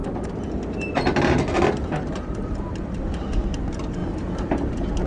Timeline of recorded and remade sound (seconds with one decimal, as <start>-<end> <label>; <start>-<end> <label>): 0.0-5.1 recorded